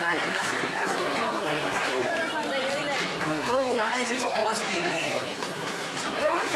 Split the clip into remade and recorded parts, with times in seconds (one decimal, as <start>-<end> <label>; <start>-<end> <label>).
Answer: 0.0-2.1 remade; 2.1-3.0 recorded; 3.0-6.6 remade